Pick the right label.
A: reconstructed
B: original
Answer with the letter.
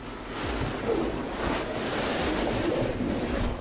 B